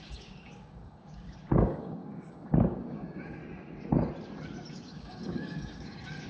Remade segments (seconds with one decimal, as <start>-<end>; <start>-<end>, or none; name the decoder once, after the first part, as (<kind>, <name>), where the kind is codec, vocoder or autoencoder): 0.0-3.4 (codec, DAC); 4.7-6.3